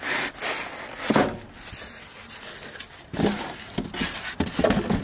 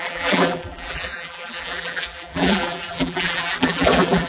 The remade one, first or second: second